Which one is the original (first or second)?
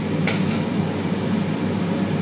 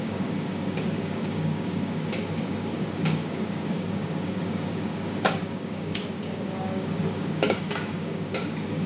first